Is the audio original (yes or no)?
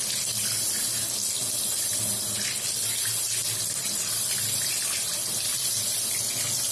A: yes